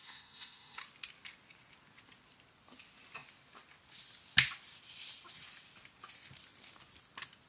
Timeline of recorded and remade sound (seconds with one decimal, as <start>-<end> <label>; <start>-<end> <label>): 0.0-0.8 remade; 0.8-7.5 recorded